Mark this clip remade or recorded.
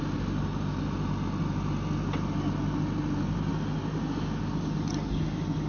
recorded